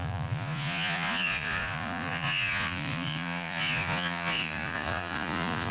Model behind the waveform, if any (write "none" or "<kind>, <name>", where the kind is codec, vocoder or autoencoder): vocoder, Vocos